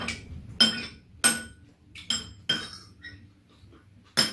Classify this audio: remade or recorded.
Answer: recorded